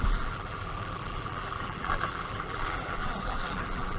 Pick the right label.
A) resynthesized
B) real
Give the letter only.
A